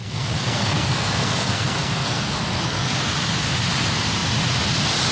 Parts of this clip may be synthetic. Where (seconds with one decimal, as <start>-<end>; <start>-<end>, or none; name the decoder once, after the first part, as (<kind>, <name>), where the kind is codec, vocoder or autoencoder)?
0.0-3.1 (codec, SNAC)